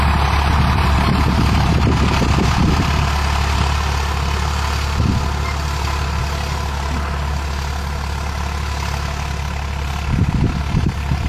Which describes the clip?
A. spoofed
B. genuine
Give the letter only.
B